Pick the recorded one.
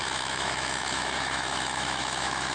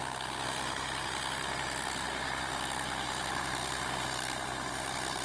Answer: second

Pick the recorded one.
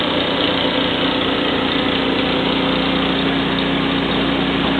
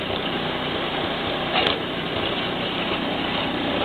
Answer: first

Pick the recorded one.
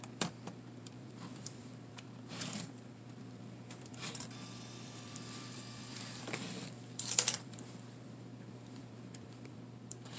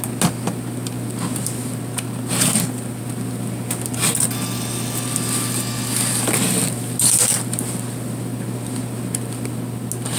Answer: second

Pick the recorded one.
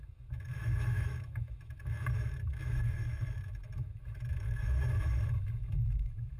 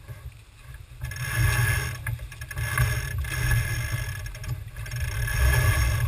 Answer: second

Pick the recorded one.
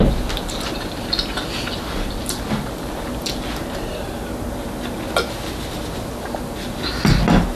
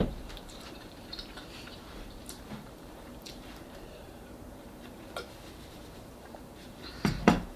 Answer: first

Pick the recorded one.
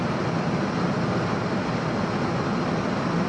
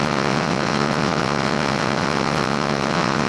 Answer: first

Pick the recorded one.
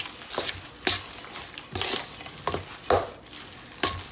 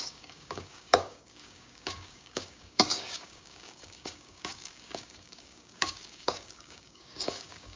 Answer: first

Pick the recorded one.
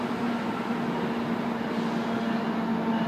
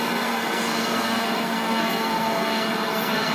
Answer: first